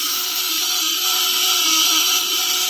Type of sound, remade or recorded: remade